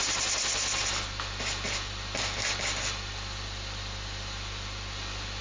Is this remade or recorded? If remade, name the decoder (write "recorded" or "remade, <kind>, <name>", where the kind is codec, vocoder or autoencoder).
recorded